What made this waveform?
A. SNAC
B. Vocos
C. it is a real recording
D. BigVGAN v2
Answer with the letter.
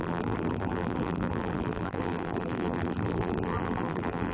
D